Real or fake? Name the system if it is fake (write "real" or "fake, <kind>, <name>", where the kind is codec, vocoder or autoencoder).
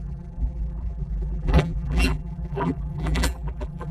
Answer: fake, vocoder, BigVGAN v2